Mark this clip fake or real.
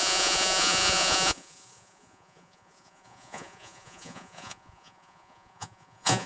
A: fake